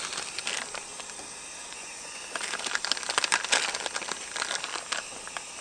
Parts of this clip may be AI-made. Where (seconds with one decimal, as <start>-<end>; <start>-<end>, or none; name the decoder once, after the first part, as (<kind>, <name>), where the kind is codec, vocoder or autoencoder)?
1.6-2.2 (vocoder, Vocos)